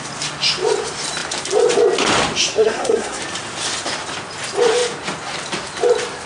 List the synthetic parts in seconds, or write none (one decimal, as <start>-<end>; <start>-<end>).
2.5-3.2